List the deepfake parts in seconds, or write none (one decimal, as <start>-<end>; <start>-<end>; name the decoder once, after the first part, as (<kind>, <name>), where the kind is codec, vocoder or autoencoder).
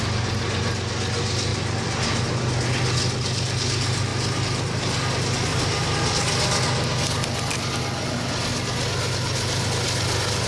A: none